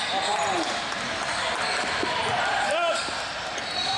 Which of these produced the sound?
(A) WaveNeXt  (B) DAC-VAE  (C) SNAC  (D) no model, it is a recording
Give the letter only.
D